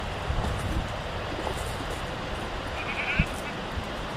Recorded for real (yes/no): yes